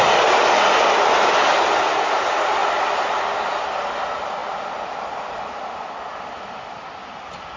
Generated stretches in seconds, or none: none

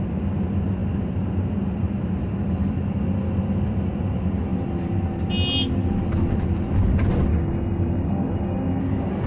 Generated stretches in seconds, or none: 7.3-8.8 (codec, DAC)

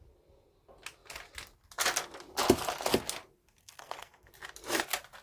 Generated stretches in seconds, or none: 3.6-4.3 (codec, SNAC)